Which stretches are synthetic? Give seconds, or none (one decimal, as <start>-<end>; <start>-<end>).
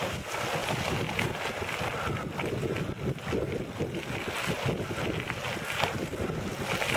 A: none